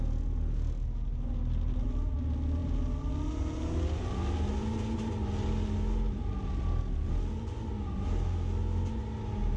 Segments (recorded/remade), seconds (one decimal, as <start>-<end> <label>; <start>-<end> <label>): 0.0-9.6 recorded